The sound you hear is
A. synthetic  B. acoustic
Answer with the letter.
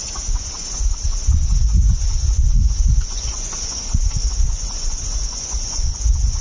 A